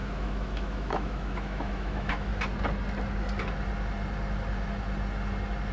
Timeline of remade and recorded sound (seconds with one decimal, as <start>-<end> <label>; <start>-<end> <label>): 0.0-2.3 remade; 2.3-5.7 recorded